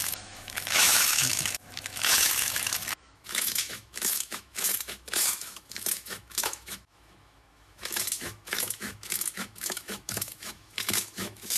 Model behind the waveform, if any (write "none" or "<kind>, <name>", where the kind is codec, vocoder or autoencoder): autoencoder, DAC-VAE